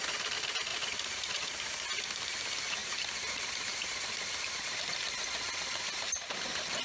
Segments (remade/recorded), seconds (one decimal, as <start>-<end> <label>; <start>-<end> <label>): 0.0-0.7 recorded; 0.7-1.7 remade; 1.7-2.8 recorded; 2.8-3.8 remade; 3.8-6.8 recorded